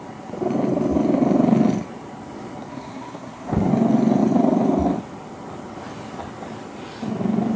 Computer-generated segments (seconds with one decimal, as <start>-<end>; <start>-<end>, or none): 2.7-3.7